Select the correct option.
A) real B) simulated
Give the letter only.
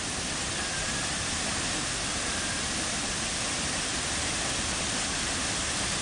A